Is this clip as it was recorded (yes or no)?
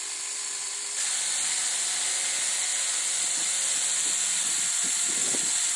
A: yes